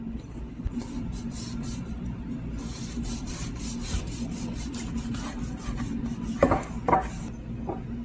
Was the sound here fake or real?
real